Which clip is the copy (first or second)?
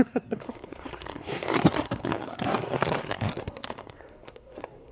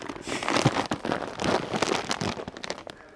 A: first